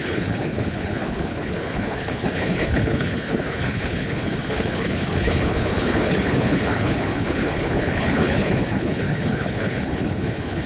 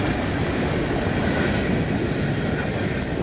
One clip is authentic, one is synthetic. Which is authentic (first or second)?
second